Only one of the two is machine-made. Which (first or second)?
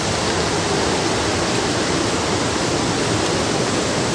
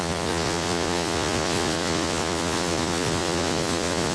second